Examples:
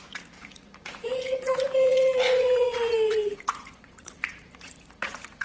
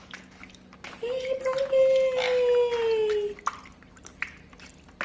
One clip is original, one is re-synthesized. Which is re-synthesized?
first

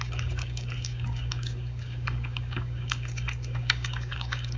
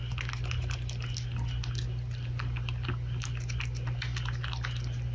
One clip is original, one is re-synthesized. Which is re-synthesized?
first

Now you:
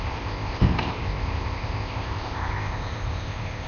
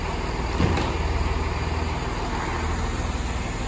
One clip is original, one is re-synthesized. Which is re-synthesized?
first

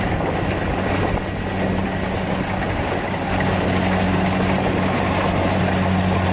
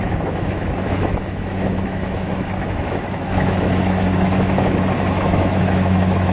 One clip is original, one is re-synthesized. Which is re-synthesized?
second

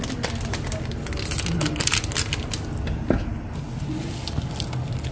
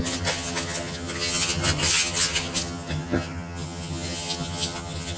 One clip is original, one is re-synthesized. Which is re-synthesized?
second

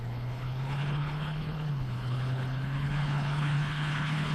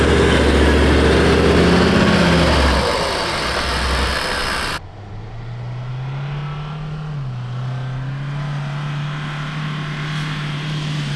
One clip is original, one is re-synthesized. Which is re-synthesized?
first